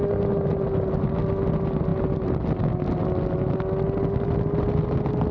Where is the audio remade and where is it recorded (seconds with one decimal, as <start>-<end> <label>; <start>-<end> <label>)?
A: 0.0-5.3 recorded